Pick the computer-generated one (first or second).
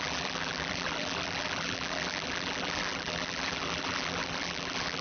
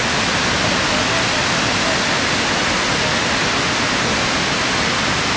first